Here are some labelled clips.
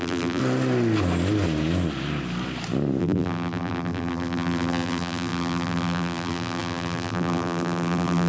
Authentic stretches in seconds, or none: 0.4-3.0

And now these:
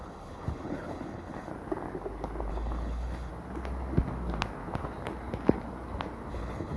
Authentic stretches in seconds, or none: 1.5-2.5; 3.3-6.3

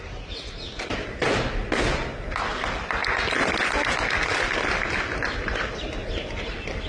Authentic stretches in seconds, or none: 0.0-6.9

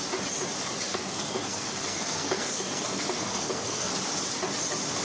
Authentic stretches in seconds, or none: 0.0-0.9; 3.9-5.0

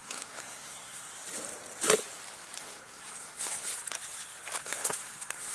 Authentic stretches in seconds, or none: 1.1-2.6; 3.7-4.6

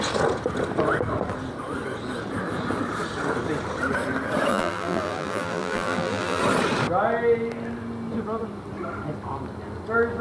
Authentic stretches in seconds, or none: 0.0-4.5; 6.4-10.2

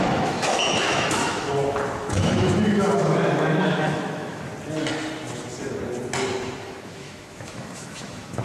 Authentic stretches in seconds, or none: 1.5-2.0; 4.5-6.6